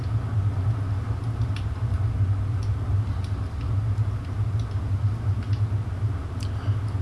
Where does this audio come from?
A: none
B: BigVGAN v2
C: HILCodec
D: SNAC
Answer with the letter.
A